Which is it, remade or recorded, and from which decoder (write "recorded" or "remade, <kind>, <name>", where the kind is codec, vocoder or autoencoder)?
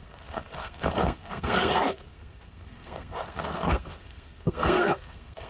remade, codec, SNAC